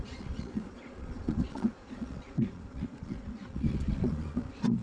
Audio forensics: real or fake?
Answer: fake